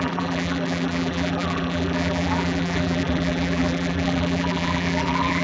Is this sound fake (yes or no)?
yes